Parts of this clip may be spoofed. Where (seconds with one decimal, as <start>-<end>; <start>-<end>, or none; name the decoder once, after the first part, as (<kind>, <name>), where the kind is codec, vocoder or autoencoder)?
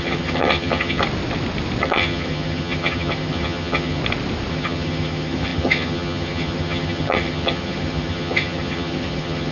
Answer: 0.0-1.0 (vocoder, HiFi-GAN); 1.8-4.0; 4.5-9.5